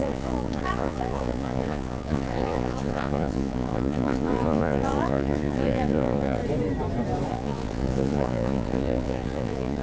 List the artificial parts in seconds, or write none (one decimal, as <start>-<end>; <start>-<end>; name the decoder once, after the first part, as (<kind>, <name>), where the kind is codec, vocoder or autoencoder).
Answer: 0.0-6.4 (vocoder, Vocos); 7.3-9.8